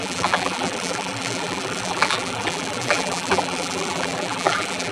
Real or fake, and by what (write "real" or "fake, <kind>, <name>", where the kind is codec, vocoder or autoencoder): fake, vocoder, BigVGAN v2